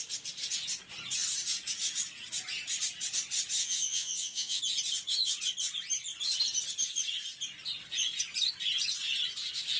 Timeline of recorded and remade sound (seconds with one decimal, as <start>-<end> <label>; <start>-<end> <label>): 0.0-3.6 recorded; 3.6-4.6 remade; 4.6-9.8 recorded